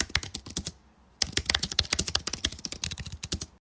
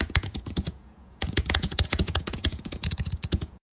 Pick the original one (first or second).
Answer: first